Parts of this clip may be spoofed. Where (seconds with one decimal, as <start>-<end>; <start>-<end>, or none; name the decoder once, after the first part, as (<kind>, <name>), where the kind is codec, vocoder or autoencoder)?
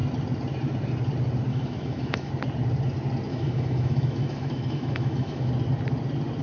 1.5-2.3 (autoencoder, DAC-VAE); 3.3-5.5